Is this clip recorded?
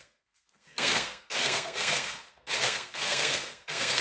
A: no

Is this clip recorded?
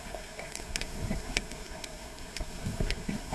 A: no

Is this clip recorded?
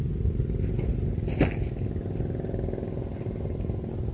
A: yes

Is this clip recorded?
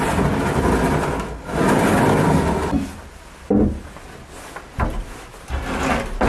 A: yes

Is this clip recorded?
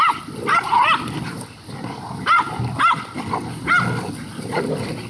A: yes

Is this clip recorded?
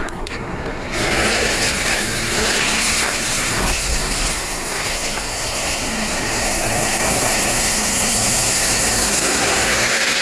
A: no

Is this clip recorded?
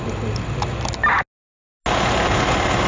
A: yes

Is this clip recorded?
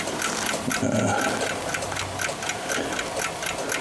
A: yes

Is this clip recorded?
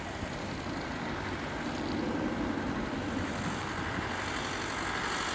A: yes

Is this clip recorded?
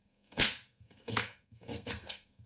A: no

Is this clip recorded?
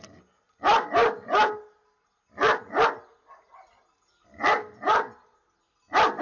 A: yes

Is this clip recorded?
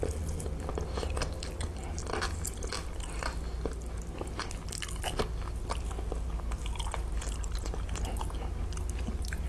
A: yes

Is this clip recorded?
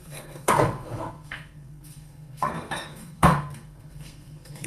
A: no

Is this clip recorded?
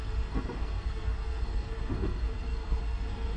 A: no